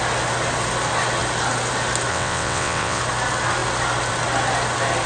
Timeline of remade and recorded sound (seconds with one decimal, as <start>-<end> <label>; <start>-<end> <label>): 0.0-2.1 recorded; 2.1-3.0 remade; 3.0-5.1 recorded